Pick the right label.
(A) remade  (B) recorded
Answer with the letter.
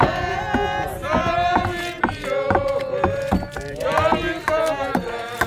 B